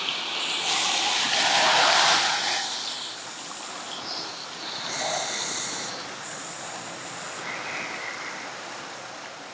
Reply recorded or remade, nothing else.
recorded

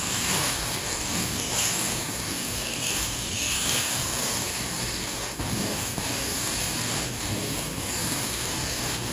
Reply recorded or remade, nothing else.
remade